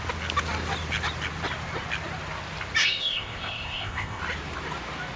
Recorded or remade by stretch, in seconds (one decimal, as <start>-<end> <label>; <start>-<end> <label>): 0.0-2.8 recorded; 2.8-4.2 remade; 4.2-5.2 recorded